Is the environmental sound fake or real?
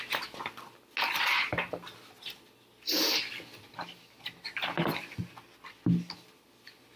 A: real